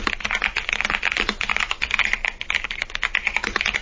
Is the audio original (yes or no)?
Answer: yes